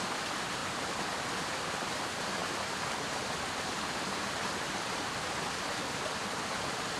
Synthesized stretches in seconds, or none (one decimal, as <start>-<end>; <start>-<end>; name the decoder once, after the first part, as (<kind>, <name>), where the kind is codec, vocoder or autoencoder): none